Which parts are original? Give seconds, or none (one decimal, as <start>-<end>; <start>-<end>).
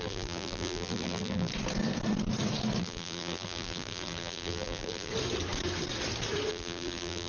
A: 1.5-2.8; 5.1-6.5